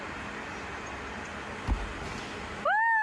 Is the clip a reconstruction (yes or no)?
no